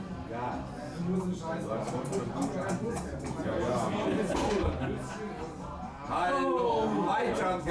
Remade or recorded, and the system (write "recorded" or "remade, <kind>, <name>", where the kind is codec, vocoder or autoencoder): recorded